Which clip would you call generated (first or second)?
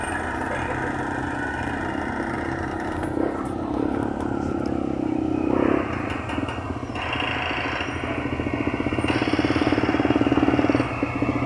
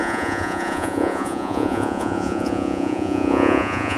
second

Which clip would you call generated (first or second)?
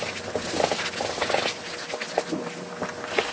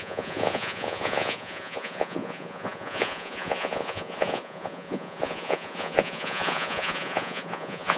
second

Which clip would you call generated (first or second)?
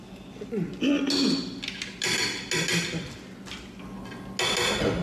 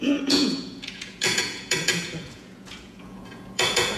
second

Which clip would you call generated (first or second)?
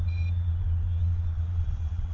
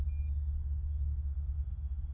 first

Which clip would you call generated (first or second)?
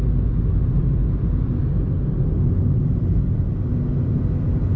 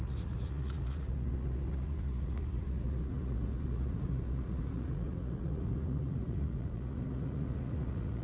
second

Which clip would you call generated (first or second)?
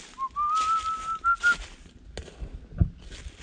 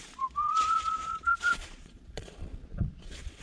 second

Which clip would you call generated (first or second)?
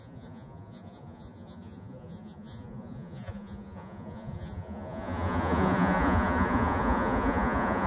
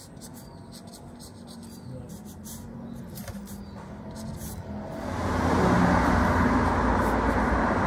first